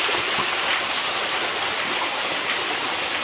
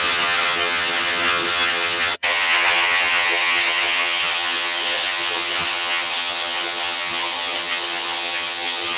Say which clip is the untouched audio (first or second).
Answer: first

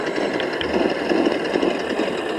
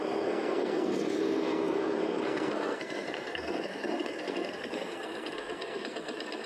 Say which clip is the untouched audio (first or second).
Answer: first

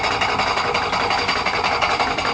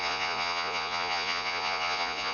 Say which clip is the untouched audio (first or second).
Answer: first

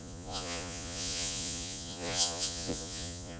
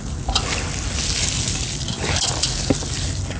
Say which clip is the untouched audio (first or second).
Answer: second